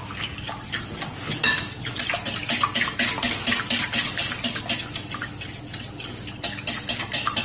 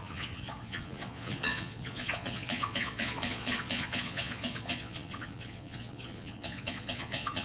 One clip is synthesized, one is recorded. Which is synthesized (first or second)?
second